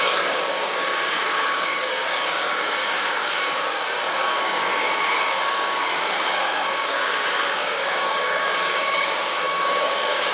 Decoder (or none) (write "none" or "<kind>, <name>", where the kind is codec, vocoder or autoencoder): codec, DAC